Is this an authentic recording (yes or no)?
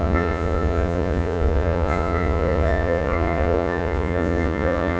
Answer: no